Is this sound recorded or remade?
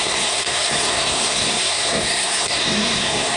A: remade